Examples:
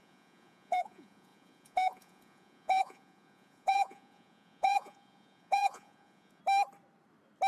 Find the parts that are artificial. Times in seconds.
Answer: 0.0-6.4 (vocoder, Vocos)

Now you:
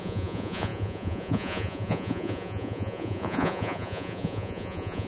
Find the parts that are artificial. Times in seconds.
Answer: 0.0-5.1 (vocoder, Vocos)

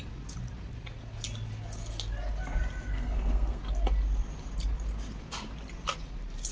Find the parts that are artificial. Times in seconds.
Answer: 2.9-3.6 (codec, SNAC)

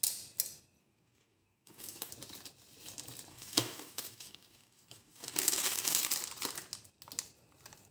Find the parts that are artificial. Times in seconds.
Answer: 0.8-2.1 (codec, DAC); 3.3-6.1